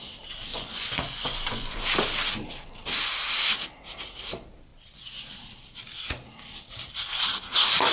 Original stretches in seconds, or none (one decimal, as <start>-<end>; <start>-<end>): 0.0-0.5; 1.8-7.9